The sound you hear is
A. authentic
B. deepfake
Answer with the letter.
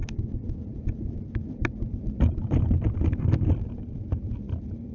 A